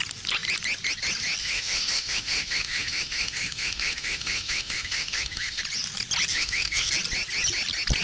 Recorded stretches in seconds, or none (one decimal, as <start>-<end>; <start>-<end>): 0.0-1.4; 5.6-6.3; 6.9-8.0